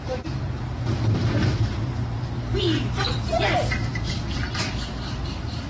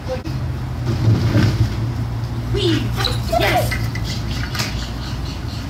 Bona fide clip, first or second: second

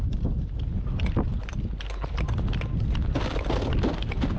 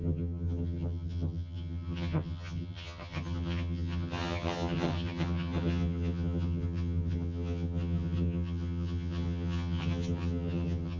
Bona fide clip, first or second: first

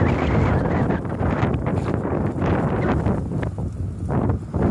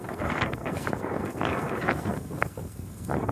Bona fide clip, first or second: first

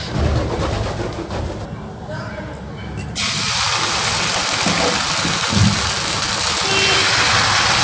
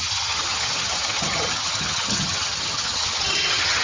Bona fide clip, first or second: first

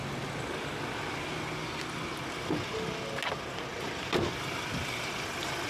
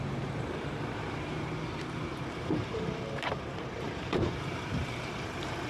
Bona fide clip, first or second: first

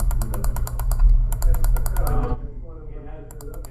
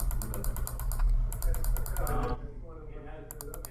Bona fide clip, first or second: second